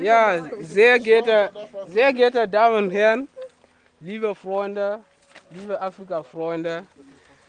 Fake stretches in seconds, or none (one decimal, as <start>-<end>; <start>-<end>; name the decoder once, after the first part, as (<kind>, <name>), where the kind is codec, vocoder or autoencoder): none